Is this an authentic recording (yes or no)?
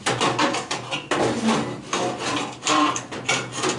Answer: yes